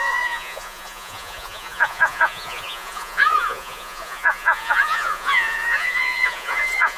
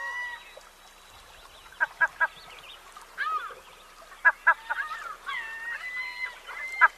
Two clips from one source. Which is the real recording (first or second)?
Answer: second